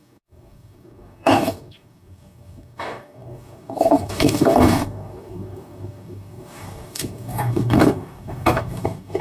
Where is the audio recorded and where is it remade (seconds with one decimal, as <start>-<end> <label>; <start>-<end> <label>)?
0.0-9.2 remade